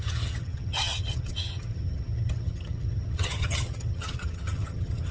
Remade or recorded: remade